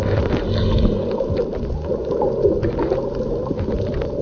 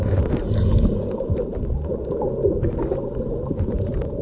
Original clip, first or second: first